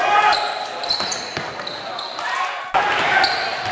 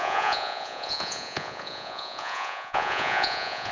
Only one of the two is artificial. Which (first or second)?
second